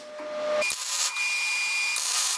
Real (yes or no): yes